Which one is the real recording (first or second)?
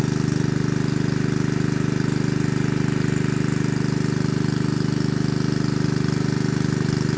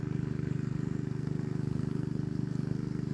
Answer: first